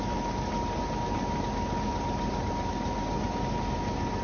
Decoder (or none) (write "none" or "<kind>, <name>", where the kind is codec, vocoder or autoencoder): none